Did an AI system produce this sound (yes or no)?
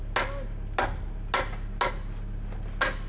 no